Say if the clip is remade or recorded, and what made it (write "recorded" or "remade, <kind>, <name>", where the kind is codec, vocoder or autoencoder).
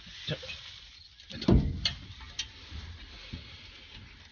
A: recorded